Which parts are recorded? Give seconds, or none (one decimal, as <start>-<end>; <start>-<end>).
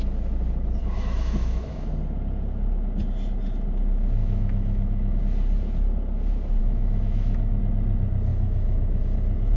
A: 0.0-0.8; 1.9-4.2; 5.2-6.6; 7.6-8.3; 9.0-9.6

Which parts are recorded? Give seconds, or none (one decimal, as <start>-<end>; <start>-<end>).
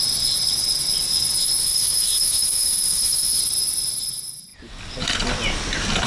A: 0.0-1.6; 3.4-6.1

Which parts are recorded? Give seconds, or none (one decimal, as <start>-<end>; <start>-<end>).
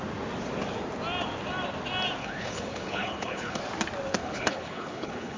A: 0.0-2.2; 3.6-4.2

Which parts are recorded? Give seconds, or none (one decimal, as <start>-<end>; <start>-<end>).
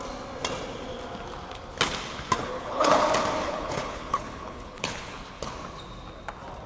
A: 0.0-2.4; 3.0-3.4; 5.5-6.7